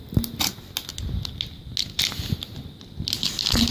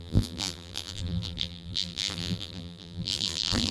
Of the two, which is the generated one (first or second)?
second